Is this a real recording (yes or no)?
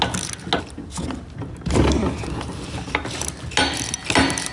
yes